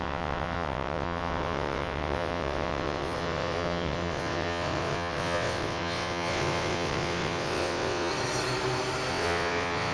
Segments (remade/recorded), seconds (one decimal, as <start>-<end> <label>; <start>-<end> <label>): 0.0-8.1 remade; 8.1-9.1 recorded; 9.1-9.9 remade